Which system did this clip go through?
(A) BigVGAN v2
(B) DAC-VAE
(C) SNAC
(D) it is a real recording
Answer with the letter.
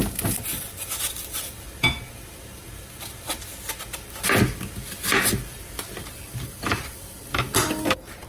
D